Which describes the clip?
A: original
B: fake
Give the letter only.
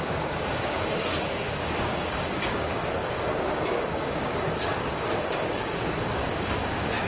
B